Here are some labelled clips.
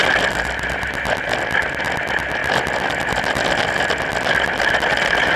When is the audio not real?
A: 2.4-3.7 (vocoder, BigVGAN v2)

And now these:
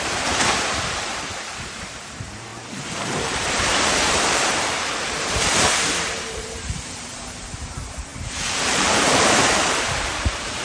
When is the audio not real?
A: 0.0-10.6 (vocoder, BigVGAN v2)

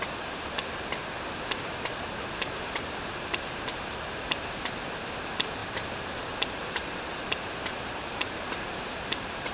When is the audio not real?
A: 0.0-1.0 (vocoder, BigVGAN v2); 2.0-9.5

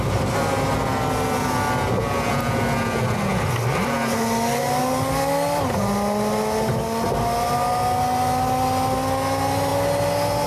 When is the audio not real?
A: none

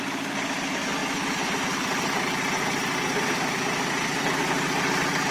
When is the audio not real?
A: none

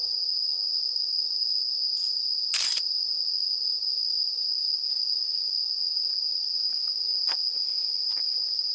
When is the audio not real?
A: none

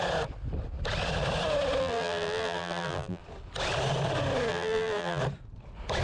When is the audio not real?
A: 1.8-3.2 (vocoder, BigVGAN v2); 4.5-5.2